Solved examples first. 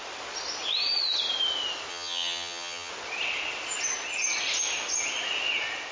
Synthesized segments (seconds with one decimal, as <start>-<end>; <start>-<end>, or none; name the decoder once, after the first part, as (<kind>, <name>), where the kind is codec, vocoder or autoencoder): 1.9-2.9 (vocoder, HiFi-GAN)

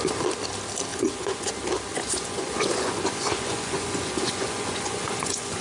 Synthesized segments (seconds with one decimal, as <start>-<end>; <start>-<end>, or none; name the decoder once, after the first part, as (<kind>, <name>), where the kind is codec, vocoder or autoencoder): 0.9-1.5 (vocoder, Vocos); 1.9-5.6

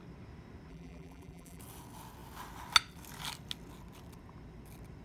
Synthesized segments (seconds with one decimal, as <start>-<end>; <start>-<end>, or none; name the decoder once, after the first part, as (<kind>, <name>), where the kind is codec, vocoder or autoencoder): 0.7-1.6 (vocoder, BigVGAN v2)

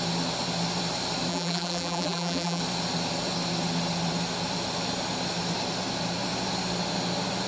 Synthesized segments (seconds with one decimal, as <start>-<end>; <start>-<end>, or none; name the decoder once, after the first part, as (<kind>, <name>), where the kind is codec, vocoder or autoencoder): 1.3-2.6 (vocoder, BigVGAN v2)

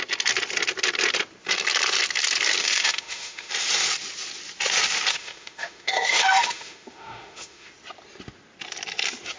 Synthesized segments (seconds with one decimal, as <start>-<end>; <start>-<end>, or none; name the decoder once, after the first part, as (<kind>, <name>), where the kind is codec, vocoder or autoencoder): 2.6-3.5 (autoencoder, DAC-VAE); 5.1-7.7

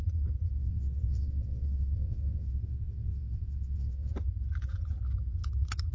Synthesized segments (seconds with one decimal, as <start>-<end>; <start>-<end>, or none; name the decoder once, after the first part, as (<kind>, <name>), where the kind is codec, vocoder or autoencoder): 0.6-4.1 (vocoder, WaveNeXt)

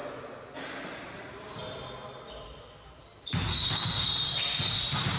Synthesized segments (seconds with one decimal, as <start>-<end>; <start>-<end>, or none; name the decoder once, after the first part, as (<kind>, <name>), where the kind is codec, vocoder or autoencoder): 3.5-4.1 (codec, SNAC)

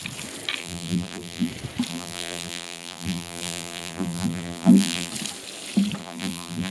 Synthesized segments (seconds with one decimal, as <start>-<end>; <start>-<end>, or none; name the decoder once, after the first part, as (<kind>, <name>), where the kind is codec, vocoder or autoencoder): 0.6-1.5 (vocoder, BigVGAN v2); 1.9-5.1; 6.0-6.7